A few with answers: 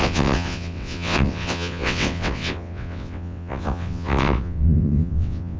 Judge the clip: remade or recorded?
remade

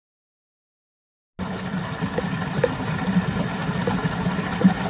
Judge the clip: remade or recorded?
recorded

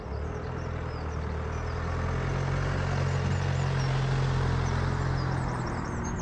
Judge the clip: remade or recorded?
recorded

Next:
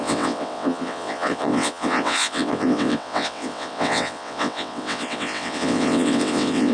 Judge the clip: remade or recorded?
remade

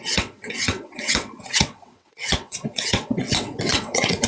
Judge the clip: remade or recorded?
remade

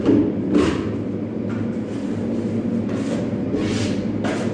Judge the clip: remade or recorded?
recorded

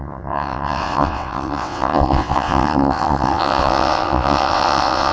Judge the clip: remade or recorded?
remade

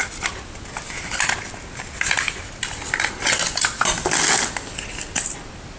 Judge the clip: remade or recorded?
recorded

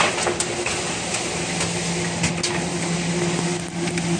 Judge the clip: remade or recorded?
recorded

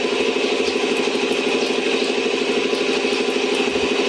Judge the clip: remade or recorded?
recorded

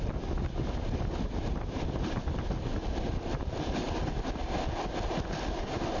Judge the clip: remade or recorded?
recorded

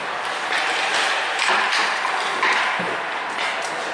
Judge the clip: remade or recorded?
recorded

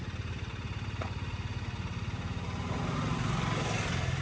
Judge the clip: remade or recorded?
recorded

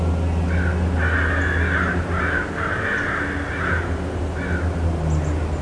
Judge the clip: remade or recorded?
recorded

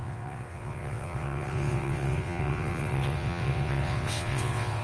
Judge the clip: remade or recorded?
remade